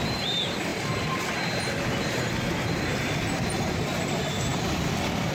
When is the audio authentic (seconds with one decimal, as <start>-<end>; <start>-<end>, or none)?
0.0-4.5